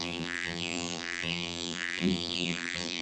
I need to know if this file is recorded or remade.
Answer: remade